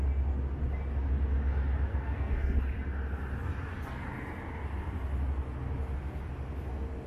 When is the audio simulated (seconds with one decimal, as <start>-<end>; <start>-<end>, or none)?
1.9-2.6